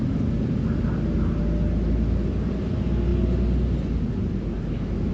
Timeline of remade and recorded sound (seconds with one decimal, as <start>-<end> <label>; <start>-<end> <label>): 0.0-5.1 recorded